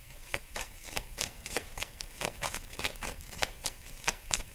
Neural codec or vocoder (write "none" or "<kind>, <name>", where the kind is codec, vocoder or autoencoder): codec, SNAC